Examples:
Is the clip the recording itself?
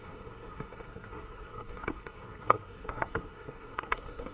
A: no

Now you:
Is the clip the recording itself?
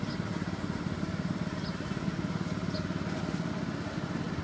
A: yes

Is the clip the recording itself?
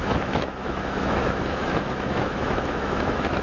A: no